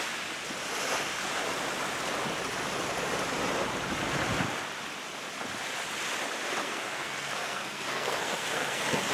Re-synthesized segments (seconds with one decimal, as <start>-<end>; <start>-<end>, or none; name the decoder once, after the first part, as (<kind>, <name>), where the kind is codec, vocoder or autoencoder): 6.6-9.1 (codec, SNAC)